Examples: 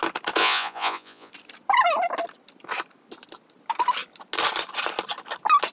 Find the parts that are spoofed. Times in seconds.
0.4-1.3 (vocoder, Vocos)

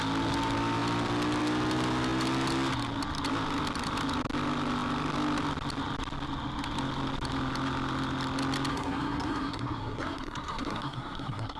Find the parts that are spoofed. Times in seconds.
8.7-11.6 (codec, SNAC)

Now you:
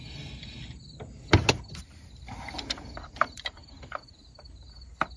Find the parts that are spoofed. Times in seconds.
3.0-5.2 (vocoder, BigVGAN v2)

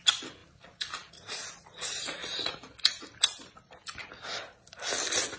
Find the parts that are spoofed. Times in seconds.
0.4-1.1 (vocoder, BigVGAN v2)

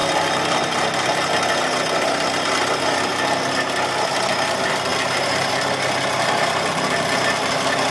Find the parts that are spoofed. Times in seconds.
none

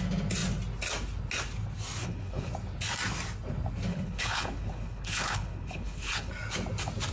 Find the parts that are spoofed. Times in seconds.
2.0-2.5 (codec, HILCodec); 3.9-6.3